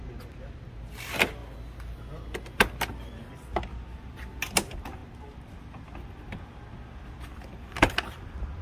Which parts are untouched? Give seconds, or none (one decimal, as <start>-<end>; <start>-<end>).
0.0-7.3; 7.9-8.6